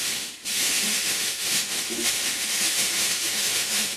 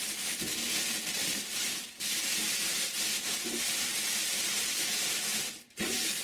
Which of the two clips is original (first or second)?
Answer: second